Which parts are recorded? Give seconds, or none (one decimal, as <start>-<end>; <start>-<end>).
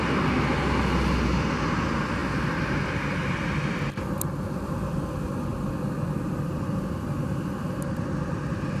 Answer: 0.0-8.8